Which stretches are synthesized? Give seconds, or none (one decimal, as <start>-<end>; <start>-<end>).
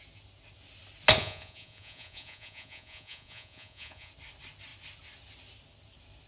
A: 1.2-4.1